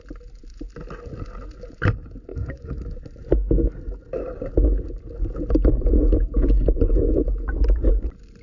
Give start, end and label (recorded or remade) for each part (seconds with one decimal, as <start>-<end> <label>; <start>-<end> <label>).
0.0-2.3 recorded; 2.3-2.8 remade; 2.8-8.4 recorded